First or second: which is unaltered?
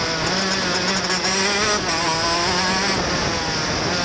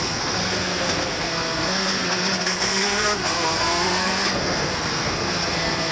first